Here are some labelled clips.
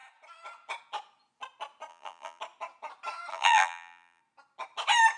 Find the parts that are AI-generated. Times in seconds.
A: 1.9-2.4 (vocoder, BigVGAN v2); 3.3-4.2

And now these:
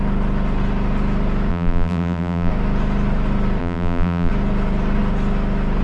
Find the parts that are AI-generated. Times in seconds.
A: 1.5-2.5 (vocoder, BigVGAN v2); 3.6-4.3

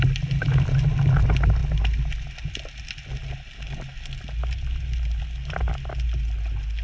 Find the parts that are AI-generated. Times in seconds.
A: none

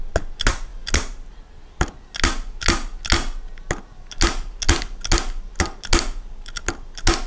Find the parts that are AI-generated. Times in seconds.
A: none